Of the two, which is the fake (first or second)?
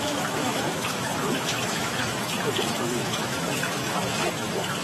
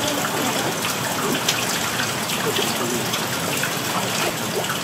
first